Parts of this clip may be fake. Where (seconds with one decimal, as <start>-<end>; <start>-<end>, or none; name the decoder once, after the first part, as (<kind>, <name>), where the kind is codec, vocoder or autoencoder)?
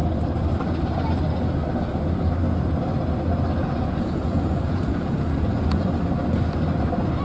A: 3.6-5.9 (vocoder, Vocos)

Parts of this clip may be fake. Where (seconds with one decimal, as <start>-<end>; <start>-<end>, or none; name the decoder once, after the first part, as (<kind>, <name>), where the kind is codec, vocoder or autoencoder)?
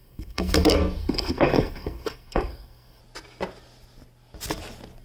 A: 0.0-3.0 (codec, SNAC)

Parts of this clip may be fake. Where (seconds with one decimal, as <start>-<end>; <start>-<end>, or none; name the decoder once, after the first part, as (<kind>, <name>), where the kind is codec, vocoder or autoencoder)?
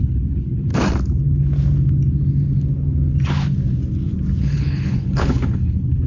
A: 0.0-0.7 (codec, HILCodec); 4.4-6.1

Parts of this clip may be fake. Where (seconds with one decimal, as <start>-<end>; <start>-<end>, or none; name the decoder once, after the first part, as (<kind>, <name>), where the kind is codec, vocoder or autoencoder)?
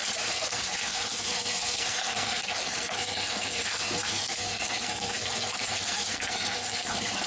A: 0.0-7.3 (codec, SNAC)